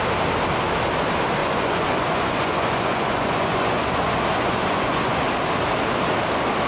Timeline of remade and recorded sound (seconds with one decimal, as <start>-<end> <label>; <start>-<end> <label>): 0.0-1.4 recorded; 1.4-5.2 remade; 5.2-6.7 recorded